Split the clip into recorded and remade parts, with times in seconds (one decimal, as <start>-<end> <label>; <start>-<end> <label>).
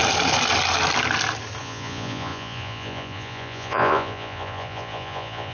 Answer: 0.0-1.6 recorded; 1.6-5.5 remade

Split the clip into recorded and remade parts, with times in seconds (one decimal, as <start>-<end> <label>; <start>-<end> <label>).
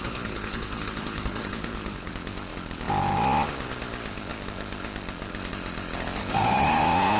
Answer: 0.0-2.1 remade; 2.1-6.2 recorded; 6.2-6.8 remade; 6.8-7.2 recorded